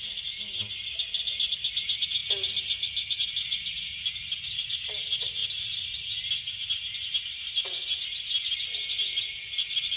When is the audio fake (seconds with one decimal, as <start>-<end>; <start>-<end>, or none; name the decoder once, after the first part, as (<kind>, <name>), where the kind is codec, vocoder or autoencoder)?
none

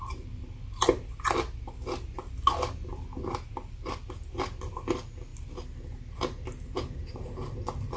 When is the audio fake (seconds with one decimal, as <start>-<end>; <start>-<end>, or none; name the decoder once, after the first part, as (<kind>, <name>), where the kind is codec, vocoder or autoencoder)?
none

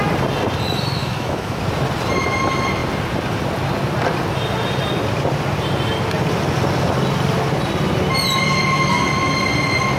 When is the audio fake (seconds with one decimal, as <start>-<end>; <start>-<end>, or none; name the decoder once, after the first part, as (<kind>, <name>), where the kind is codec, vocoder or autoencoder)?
1.0-1.6 (autoencoder, DAC-VAE)

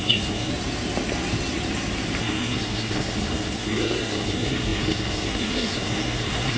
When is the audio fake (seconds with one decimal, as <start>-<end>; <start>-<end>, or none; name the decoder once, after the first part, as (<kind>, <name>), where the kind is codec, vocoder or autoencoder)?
0.0-0.5 (codec, SNAC); 2.2-6.6

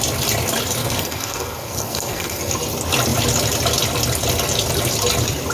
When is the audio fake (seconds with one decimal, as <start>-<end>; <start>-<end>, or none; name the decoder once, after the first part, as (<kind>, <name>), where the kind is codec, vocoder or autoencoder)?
0.8-2.5 (codec, SNAC)

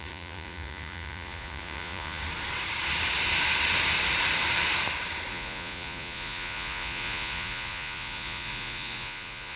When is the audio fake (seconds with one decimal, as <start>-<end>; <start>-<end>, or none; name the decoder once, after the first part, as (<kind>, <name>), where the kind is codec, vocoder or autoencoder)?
0.0-2.2 (vocoder, Vocos); 5.3-9.6

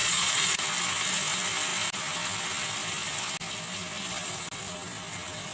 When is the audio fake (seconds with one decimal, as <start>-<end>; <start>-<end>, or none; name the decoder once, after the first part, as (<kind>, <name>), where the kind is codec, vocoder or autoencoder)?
0.0-0.6 (vocoder, Vocos)

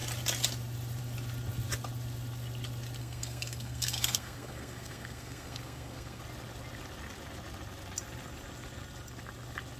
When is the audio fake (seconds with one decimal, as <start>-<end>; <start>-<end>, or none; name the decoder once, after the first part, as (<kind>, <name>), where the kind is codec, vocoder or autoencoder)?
3.0-6.2 (codec, SNAC)